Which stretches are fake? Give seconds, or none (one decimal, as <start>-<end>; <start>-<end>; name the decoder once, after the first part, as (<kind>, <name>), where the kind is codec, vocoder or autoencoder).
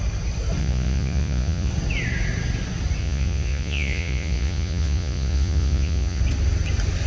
0.6-1.7 (vocoder, Vocos); 3.0-6.2